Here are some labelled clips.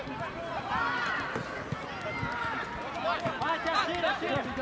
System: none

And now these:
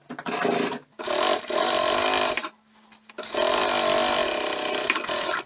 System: none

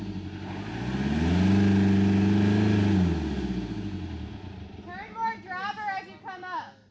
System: none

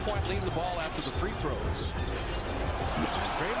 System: none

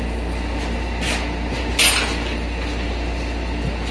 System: none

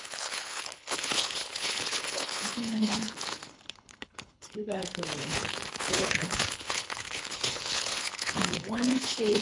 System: codec, HILCodec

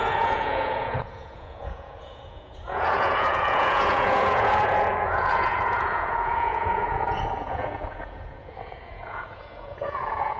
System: vocoder, Vocos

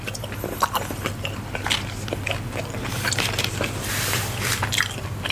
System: none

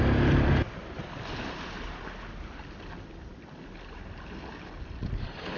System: none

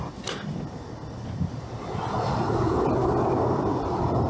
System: none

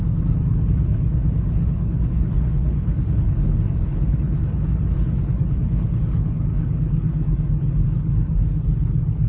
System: codec, HILCodec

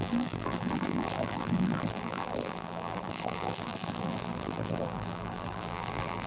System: vocoder, BigVGAN v2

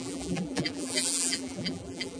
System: vocoder, BigVGAN v2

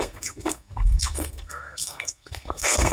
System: codec, SNAC